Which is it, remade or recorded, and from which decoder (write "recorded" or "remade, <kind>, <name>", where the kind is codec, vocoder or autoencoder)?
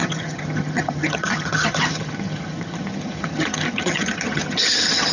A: remade, vocoder, HiFi-GAN